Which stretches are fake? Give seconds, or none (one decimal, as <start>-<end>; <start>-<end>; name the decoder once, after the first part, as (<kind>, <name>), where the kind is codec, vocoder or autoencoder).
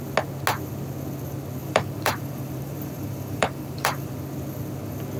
1.6-4.1 (vocoder, BigVGAN v2)